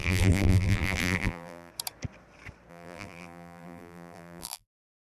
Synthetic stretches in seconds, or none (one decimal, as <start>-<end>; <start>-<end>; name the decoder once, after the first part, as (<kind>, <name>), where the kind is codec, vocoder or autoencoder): 0.0-1.7 (vocoder, BigVGAN v2); 2.7-5.0